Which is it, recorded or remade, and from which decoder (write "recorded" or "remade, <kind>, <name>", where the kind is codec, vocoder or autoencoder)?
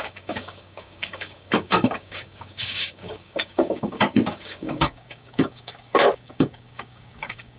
remade, codec, DAC